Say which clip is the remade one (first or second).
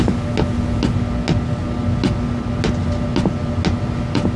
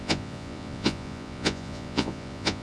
second